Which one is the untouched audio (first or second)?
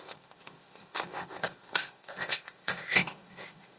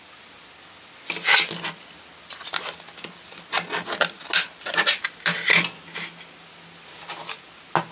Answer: second